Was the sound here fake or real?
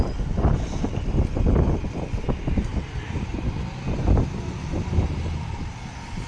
real